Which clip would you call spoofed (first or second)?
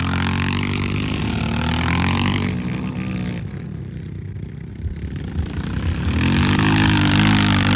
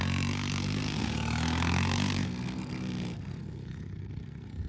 second